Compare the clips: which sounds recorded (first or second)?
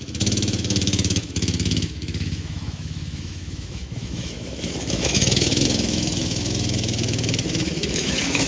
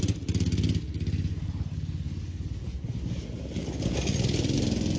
second